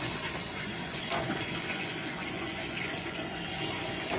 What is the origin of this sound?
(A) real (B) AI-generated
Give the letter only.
B